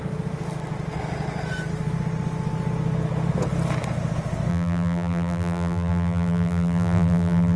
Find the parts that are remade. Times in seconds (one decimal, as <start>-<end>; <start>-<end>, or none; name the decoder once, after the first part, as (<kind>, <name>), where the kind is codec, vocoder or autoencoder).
4.5-7.6 (vocoder, BigVGAN v2)

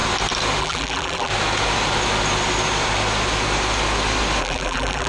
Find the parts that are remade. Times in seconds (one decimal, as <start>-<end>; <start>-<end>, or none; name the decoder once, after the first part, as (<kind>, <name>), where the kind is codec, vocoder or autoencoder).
0.6-1.3 (vocoder, BigVGAN v2); 4.4-5.1

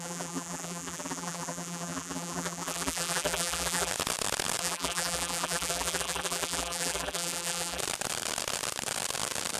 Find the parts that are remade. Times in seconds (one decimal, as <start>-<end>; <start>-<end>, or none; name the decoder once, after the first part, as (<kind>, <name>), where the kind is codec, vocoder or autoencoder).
0.0-3.9 (vocoder, BigVGAN v2); 4.6-7.8

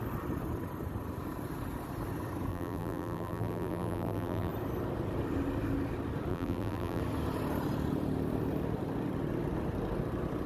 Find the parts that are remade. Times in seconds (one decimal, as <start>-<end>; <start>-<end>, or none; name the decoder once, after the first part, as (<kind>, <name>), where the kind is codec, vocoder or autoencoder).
2.5-4.5 (vocoder, BigVGAN v2); 6.3-7.0

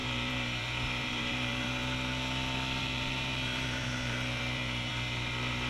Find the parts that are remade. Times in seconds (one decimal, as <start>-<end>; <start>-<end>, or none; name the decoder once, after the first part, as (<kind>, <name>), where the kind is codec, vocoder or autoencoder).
0.0-1.8 (vocoder, BigVGAN v2); 2.8-5.7

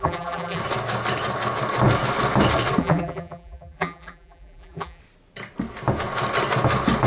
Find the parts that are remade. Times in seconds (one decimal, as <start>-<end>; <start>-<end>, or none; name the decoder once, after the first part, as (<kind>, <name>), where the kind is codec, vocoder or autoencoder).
0.0-0.6 (vocoder, BigVGAN v2); 2.8-5.0